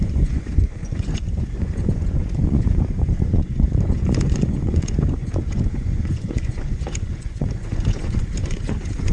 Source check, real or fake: fake